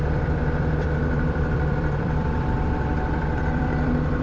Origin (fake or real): fake